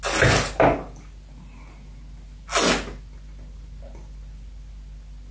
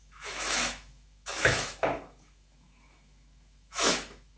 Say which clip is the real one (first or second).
first